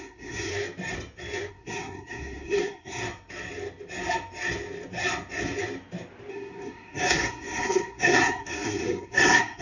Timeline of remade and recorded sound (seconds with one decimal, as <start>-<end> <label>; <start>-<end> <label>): 0.0-0.5 remade; 0.5-1.5 recorded; 1.5-3.0 remade; 3.0-6.3 recorded; 6.3-9.6 remade